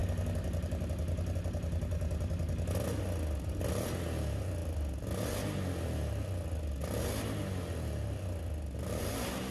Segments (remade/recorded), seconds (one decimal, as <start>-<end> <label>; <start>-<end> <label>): 0.0-9.5 recorded

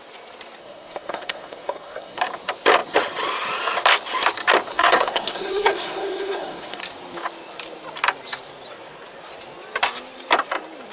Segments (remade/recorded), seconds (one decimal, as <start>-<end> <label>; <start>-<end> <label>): 0.0-0.6 recorded; 0.6-2.2 remade; 2.2-4.7 recorded; 4.7-6.8 remade; 6.8-10.9 recorded

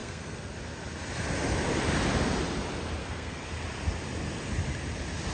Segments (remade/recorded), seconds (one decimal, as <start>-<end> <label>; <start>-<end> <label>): 0.0-0.5 remade; 0.5-3.0 recorded; 3.0-3.5 remade; 3.5-5.3 recorded

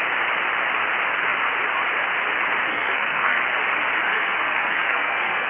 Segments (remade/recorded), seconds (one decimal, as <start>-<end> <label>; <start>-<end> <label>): 0.0-2.7 recorded; 2.7-3.4 remade; 3.4-4.1 recorded; 4.1-5.5 remade

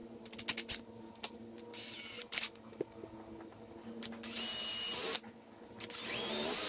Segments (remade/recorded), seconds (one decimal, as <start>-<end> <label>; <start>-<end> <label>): 0.0-6.7 recorded

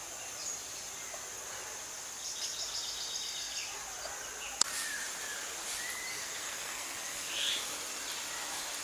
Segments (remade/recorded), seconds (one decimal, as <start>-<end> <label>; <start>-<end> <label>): 0.0-6.1 recorded; 6.1-7.5 remade; 7.5-8.8 recorded

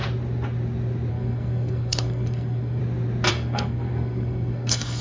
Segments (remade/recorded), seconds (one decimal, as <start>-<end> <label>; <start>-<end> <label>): 0.0-1.1 recorded; 1.1-2.8 remade; 2.8-3.3 recorded; 3.3-5.0 remade